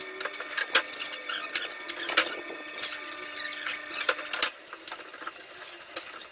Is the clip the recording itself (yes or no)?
yes